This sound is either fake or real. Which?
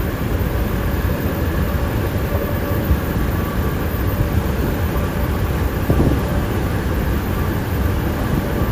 fake